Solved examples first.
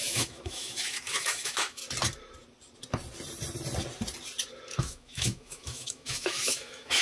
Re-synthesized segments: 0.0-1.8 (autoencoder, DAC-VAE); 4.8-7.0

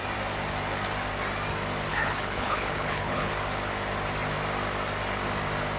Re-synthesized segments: 1.9-3.3 (codec, HILCodec)

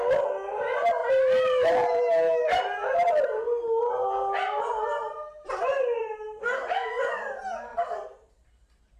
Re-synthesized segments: 1.0-2.6 (vocoder, BigVGAN v2); 4.9-6.4; 7.7-8.5

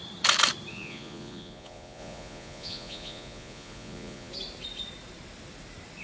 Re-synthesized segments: 0.7-4.3 (vocoder, Vocos)

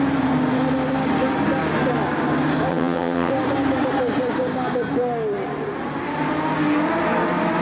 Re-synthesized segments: 2.7-3.3 (vocoder, HiFi-GAN)

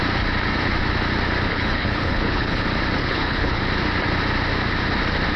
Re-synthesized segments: 1.5-2.6 (codec, HILCodec); 3.0-3.6